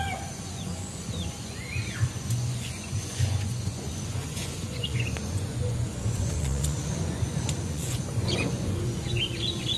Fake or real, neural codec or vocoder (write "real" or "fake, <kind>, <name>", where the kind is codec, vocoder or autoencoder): fake, vocoder, Vocos